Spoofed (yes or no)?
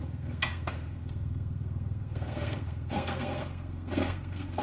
yes